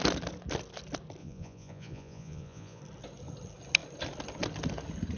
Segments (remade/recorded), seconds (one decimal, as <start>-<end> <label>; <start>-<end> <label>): 0.0-1.2 recorded; 1.2-2.8 remade; 2.8-5.2 recorded